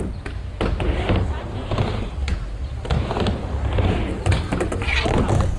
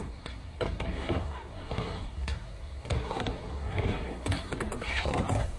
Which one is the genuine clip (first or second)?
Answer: first